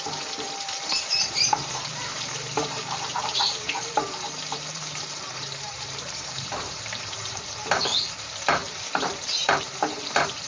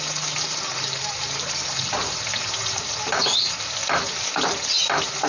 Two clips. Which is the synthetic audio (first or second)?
first